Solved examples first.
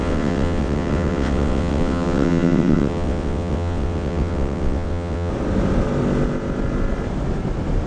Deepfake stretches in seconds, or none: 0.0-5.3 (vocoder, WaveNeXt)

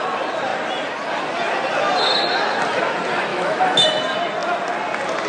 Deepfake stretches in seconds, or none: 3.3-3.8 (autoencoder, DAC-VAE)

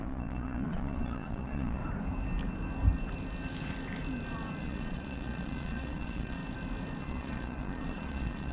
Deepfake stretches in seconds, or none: 0.0-1.8 (vocoder, Vocos); 4.6-6.4; 7.0-8.5